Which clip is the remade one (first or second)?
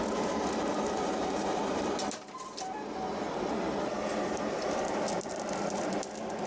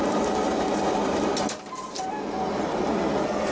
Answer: first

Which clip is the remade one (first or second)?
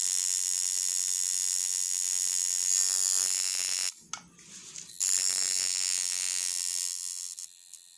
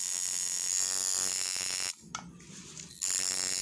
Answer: second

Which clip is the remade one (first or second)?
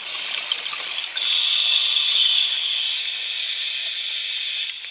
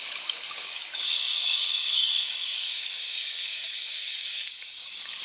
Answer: second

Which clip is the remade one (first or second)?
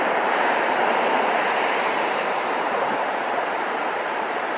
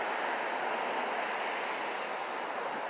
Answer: first